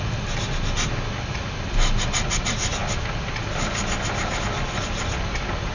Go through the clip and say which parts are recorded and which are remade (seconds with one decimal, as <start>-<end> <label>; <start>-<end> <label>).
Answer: 0.0-5.7 recorded